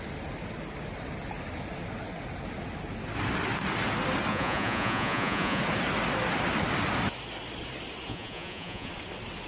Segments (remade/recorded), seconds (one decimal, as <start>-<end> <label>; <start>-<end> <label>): 0.0-4.3 recorded; 4.3-5.6 remade; 5.6-8.1 recorded; 8.1-8.9 remade; 8.9-9.5 recorded